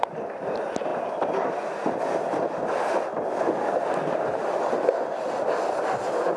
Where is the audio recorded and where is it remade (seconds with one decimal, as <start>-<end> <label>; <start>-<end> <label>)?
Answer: 0.0-6.4 recorded